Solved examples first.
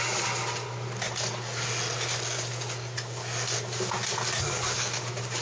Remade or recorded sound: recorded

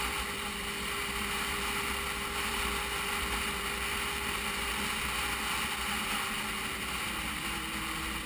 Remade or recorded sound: recorded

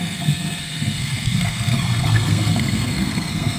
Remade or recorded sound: remade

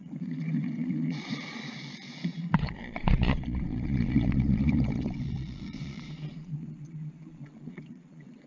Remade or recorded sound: remade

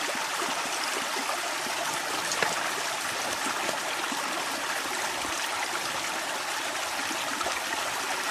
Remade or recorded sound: recorded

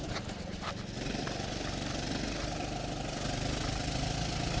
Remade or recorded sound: recorded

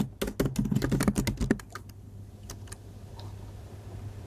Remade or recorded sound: recorded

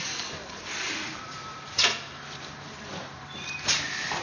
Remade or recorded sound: remade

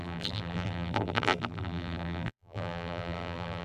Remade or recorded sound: remade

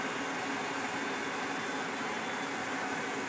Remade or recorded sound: recorded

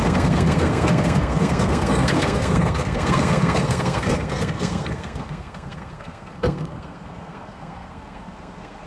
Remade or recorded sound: remade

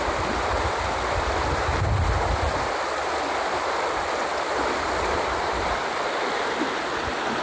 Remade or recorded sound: recorded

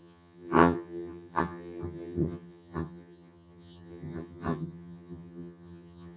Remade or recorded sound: remade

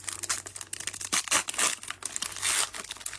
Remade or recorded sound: recorded